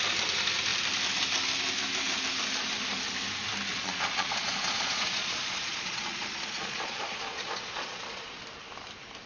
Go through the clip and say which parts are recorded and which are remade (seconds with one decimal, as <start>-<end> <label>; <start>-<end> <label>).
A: 0.0-3.7 recorded; 3.7-8.4 remade; 8.4-9.3 recorded